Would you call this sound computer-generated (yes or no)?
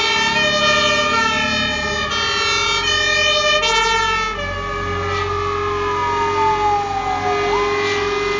no